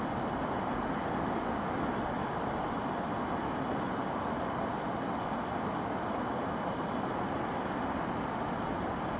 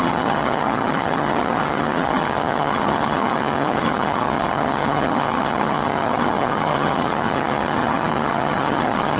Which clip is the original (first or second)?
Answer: first